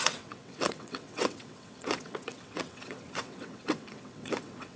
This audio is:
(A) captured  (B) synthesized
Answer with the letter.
B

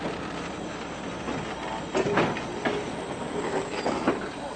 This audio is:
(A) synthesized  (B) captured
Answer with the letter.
B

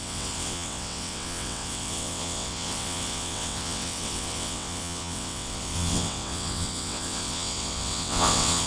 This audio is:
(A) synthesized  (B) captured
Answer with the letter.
A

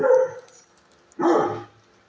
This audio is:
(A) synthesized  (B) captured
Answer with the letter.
B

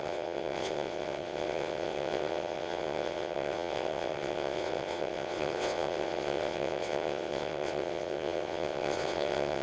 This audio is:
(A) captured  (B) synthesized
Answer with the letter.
B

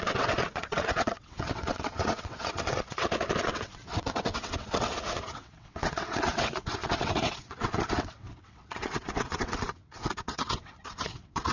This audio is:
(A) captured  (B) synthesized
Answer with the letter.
B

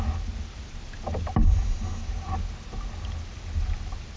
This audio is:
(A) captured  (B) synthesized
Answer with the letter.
A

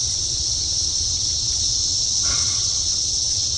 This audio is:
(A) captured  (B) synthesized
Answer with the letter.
B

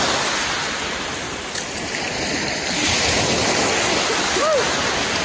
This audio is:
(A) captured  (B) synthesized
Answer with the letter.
A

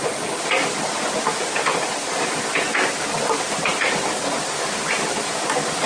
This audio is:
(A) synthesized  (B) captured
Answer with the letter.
B